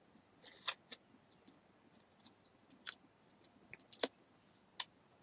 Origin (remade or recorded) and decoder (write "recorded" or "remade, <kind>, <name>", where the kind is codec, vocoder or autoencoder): recorded